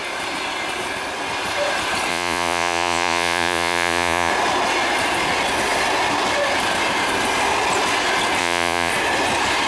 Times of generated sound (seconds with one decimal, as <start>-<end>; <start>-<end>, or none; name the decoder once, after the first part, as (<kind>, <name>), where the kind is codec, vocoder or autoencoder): 2.1-4.3 (vocoder, Vocos); 8.4-8.9